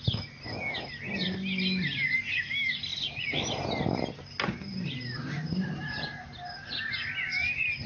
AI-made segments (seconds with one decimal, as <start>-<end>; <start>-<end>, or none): none